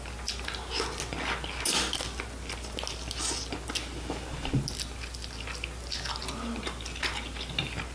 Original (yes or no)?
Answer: yes